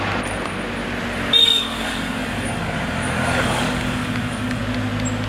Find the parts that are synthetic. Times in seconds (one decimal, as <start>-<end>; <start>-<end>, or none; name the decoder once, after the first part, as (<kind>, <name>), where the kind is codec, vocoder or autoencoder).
1.4-4.6 (codec, DAC)